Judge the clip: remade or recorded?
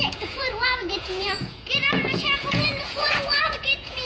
remade